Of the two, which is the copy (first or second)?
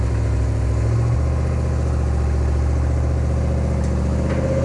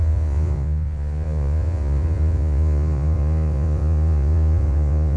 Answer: second